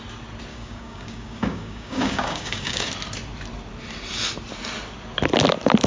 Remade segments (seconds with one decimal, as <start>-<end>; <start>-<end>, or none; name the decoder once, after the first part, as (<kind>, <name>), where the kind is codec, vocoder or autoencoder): 0.5-2.9 (codec, DAC)